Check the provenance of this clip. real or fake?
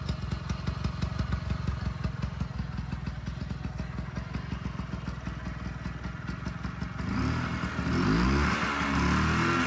real